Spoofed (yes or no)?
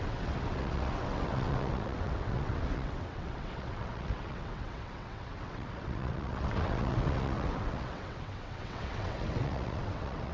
yes